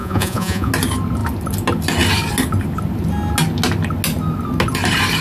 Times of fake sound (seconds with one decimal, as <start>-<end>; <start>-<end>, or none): 0.0-0.7